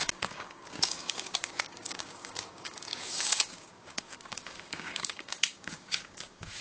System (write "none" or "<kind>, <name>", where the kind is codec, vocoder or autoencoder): codec, DAC